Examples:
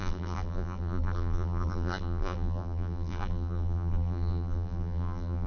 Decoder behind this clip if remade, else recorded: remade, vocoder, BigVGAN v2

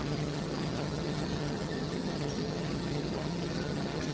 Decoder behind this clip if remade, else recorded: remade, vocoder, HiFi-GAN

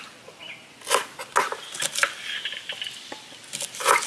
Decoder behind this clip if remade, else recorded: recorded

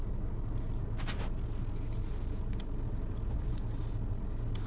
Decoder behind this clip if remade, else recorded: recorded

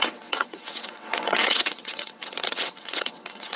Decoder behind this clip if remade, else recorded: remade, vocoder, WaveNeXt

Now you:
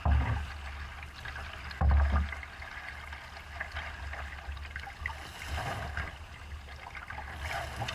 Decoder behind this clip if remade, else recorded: recorded